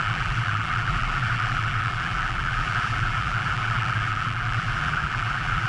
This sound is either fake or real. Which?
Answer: fake